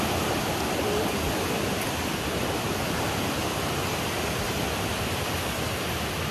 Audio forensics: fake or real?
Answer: real